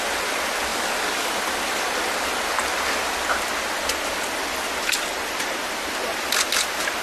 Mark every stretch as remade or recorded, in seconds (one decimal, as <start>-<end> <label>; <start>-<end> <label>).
0.0-0.7 recorded; 0.7-1.3 remade; 1.3-7.0 recorded